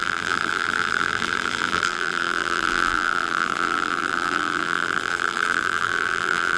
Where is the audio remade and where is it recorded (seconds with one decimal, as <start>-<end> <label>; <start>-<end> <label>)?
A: 0.0-6.6 remade